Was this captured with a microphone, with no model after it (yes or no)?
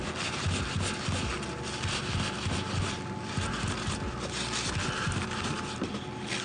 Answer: yes